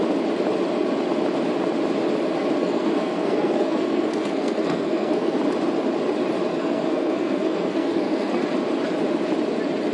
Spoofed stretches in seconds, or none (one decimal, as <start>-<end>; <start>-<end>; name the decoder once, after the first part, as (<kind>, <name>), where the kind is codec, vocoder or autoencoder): 2.6-5.4 (codec, SNAC); 6.5-8.3